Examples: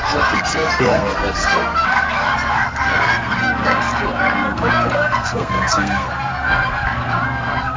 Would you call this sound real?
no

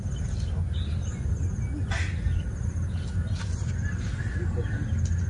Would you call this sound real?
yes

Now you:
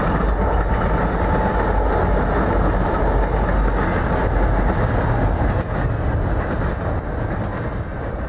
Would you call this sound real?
yes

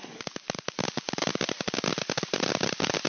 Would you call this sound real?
yes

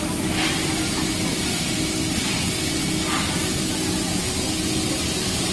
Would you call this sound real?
yes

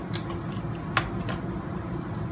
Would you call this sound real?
yes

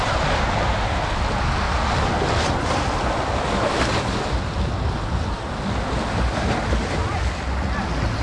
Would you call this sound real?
yes